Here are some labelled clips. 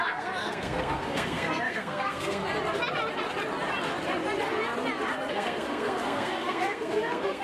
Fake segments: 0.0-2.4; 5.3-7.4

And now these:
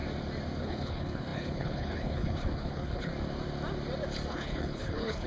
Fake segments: 0.6-3.1; 4.3-5.3

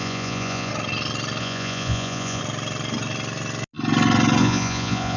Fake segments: 0.0-0.7; 1.4-2.4; 4.4-5.2

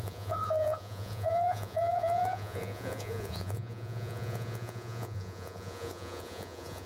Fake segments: 0.0-6.9

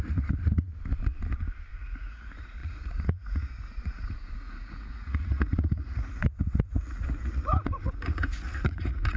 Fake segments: 0.0-0.7; 1.7-9.2